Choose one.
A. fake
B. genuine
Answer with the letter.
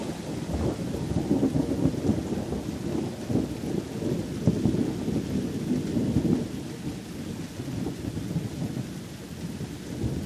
B